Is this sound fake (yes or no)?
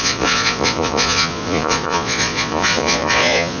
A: yes